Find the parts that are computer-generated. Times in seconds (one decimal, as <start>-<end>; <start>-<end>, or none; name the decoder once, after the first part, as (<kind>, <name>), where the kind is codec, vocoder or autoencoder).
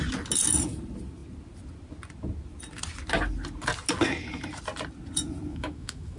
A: 5.5-6.2 (autoencoder, DAC-VAE)